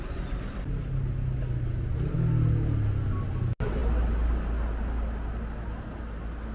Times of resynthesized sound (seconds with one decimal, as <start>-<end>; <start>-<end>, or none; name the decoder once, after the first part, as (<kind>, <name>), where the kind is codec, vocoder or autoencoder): none